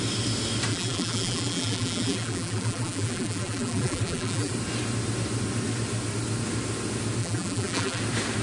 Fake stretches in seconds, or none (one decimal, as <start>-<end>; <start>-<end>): 0.7-4.5; 7.2-8.0